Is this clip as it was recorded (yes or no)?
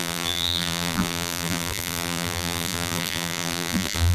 no